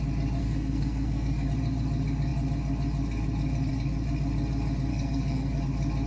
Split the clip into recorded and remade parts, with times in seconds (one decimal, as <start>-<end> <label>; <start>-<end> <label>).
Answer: 0.0-0.4 recorded; 0.4-1.5 remade; 1.5-4.9 recorded; 4.9-5.6 remade; 5.6-6.1 recorded